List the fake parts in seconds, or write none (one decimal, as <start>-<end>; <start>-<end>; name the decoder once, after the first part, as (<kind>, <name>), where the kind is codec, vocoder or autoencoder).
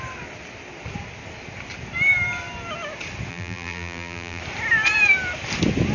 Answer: 3.3-4.4 (vocoder, BigVGAN v2)